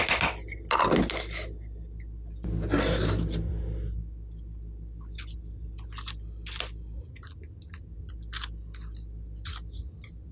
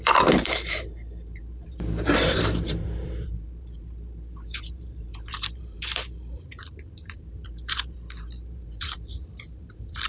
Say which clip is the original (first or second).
first